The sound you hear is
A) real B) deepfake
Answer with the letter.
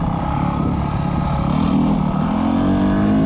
A